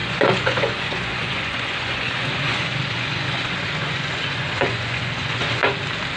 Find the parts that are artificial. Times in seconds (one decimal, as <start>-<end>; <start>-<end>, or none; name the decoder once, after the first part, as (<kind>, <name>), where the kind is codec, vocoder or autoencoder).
0.0-5.6 (vocoder, Vocos)

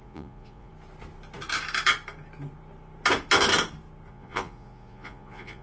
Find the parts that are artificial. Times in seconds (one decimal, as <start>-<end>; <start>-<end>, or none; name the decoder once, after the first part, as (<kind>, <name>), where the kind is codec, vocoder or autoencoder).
0.0-0.7 (vocoder, Vocos); 4.1-5.6